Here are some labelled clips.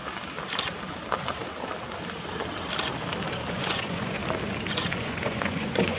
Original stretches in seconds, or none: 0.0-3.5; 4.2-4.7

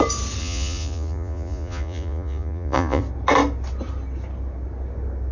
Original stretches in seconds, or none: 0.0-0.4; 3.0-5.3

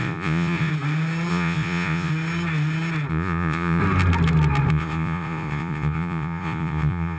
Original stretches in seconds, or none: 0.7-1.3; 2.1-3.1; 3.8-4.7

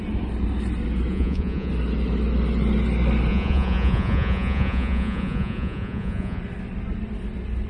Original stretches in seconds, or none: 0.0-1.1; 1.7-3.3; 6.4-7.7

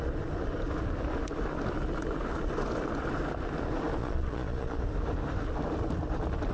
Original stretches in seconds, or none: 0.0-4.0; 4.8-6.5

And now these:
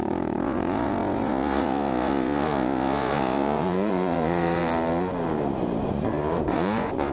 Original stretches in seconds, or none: 4.6-5.8

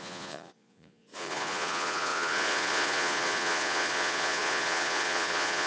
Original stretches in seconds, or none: none

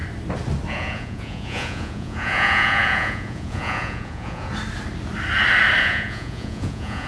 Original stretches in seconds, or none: 0.0-0.7; 4.5-5.8